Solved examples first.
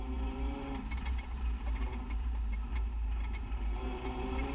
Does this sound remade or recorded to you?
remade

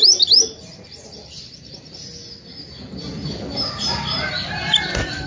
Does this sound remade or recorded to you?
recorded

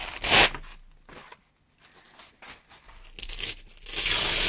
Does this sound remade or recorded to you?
recorded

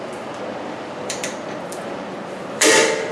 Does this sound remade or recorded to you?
remade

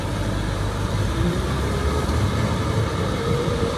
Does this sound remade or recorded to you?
remade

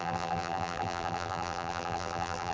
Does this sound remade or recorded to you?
remade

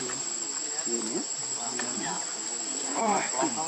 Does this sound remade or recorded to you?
remade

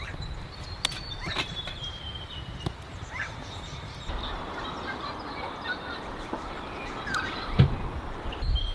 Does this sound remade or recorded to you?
remade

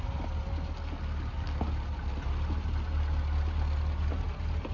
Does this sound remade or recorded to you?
recorded